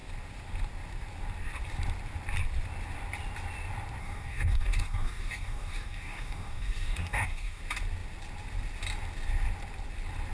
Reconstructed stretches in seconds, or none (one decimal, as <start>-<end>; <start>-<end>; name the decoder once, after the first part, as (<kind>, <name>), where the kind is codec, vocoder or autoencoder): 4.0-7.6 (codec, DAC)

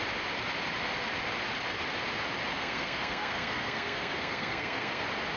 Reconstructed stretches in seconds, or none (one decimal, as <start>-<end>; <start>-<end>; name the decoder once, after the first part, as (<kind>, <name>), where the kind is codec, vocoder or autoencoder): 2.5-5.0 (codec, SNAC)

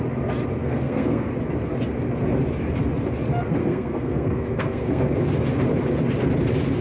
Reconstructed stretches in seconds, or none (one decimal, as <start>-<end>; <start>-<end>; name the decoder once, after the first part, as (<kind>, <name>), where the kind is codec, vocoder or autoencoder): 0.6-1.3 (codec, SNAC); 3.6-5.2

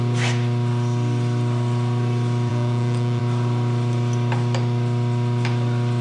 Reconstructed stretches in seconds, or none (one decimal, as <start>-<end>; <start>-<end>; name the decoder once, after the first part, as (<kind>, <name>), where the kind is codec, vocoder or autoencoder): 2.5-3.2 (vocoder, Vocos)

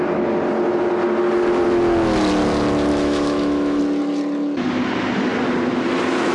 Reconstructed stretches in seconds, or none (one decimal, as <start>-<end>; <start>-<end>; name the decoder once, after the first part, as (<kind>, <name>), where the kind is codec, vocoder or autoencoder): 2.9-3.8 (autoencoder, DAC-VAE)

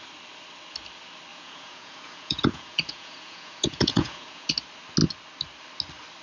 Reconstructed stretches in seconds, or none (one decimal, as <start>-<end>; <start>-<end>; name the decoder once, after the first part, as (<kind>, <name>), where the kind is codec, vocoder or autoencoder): 1.3-4.5 (vocoder, Vocos)

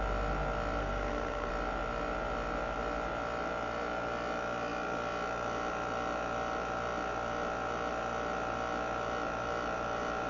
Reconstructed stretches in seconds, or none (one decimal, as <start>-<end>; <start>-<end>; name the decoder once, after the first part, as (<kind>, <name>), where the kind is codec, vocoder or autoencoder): 0.8-1.5 (codec, SNAC)

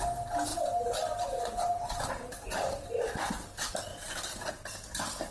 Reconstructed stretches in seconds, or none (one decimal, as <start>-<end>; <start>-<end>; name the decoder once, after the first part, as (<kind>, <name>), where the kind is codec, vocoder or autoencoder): 3.9-4.5 (vocoder, BigVGAN v2)